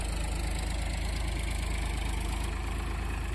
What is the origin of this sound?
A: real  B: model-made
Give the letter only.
A